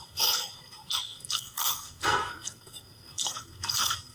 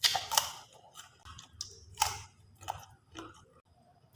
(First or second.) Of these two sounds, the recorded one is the second